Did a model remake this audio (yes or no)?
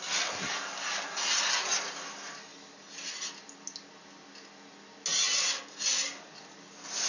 no